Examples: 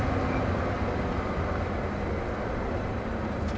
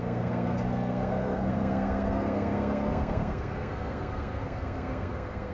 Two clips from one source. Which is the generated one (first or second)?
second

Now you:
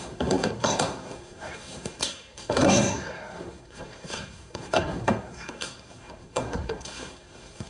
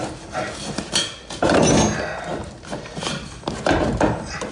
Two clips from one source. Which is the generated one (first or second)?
first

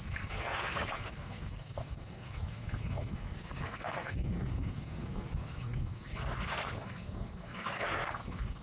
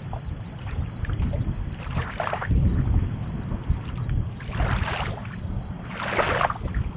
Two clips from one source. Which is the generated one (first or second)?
first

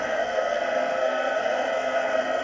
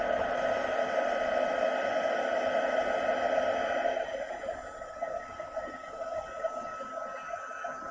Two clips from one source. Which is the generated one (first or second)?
first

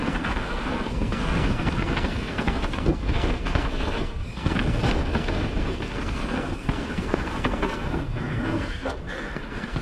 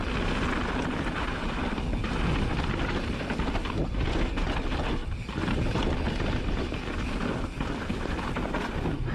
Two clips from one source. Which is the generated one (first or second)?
first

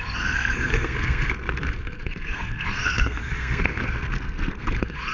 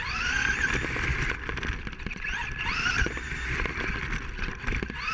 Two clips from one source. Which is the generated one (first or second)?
first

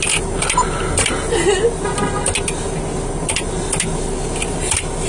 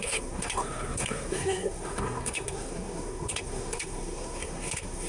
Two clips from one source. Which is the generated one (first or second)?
second